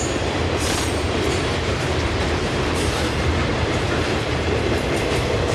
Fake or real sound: fake